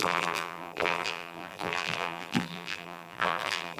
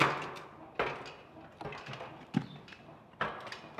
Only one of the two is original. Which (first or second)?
second